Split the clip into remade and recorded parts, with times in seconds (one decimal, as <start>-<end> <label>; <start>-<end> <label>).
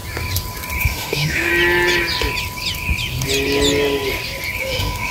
0.0-0.8 recorded; 0.8-1.5 remade; 1.5-4.6 recorded; 4.6-5.1 remade